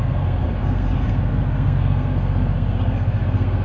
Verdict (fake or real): fake